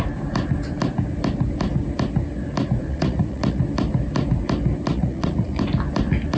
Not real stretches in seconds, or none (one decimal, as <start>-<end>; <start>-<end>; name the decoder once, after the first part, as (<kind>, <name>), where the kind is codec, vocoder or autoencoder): 2.8-3.6 (vocoder, Vocos); 4.9-5.6